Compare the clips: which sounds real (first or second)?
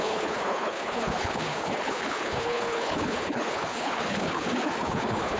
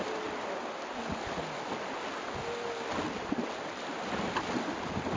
second